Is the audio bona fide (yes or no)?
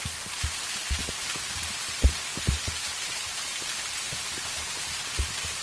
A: yes